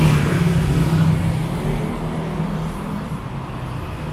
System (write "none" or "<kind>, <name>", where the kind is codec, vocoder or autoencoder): none